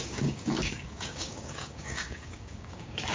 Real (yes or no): no